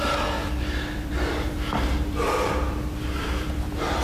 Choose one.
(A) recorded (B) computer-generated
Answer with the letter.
B